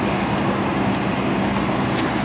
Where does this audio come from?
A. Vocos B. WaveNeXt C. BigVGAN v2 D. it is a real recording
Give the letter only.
D